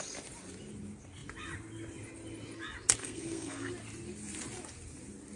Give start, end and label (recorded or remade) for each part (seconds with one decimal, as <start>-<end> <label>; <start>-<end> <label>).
0.0-3.0 recorded; 3.0-3.7 remade; 3.7-5.4 recorded